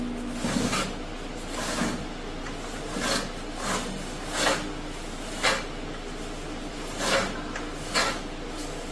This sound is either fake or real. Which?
real